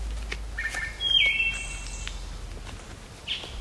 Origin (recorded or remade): recorded